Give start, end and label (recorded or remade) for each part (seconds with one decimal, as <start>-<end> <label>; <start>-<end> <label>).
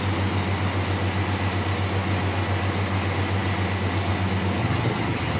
0.0-4.6 recorded; 4.6-5.4 remade